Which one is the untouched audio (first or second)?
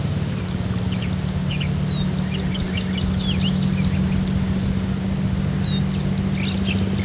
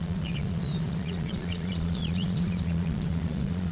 first